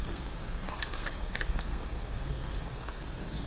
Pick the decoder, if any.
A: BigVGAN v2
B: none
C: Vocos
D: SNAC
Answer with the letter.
D